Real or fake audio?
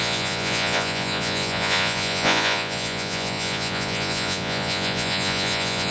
fake